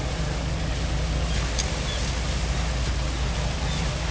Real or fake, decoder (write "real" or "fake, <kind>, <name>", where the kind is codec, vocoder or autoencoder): real